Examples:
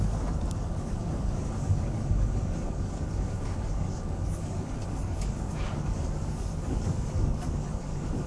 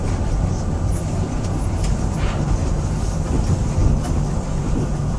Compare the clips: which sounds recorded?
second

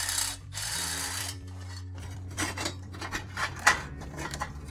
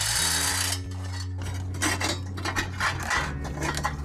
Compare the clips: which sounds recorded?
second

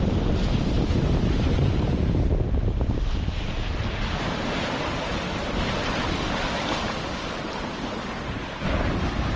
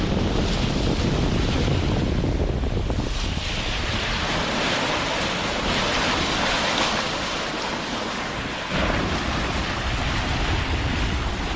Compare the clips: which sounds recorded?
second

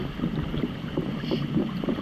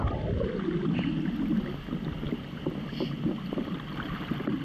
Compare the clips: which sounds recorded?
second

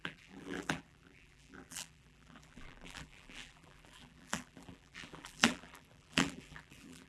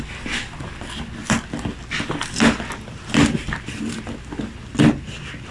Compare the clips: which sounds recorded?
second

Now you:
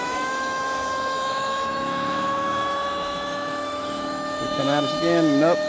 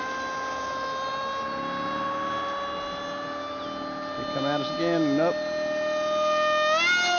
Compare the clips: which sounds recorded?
second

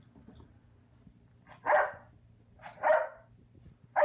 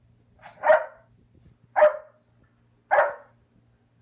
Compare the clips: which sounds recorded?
second